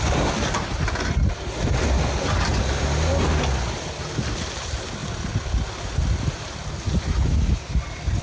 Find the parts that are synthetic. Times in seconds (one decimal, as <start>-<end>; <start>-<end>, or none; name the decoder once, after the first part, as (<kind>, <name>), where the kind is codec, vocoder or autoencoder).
none